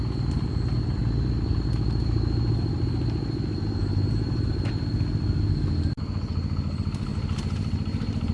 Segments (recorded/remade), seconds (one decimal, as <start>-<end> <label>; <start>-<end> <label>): 0.0-1.0 recorded; 1.0-4.9 remade; 4.9-7.1 recorded; 7.1-8.3 remade